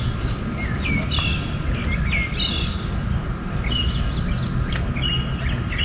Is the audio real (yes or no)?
yes